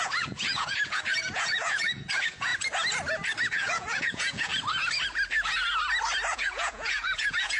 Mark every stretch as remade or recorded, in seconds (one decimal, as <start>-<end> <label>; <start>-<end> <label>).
0.0-2.5 remade; 2.5-3.5 recorded; 3.5-4.5 remade; 4.5-6.3 recorded; 6.3-7.6 remade